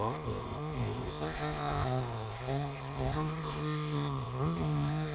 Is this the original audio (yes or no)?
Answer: no